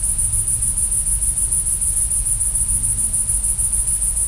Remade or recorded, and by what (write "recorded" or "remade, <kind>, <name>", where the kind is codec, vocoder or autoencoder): recorded